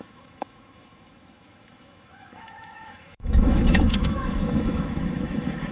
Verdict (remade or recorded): remade